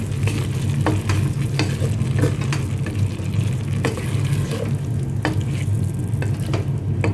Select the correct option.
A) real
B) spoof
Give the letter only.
A